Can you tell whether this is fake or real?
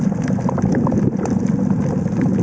real